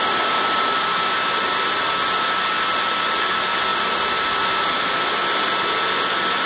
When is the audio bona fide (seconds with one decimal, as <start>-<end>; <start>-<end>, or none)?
0.0-6.5